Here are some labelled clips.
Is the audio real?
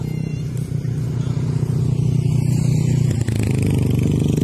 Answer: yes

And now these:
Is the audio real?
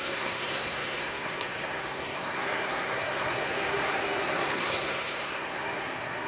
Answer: no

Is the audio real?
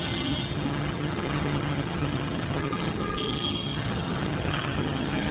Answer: no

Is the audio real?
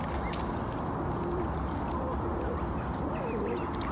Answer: yes